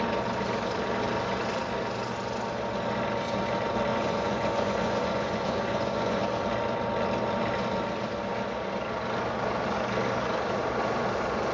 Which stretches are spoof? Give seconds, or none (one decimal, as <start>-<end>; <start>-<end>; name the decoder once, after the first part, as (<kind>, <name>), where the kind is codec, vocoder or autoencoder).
3.9-6.2 (vocoder, Vocos)